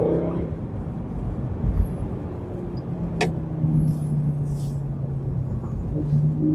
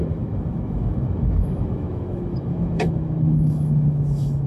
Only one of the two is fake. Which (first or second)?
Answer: second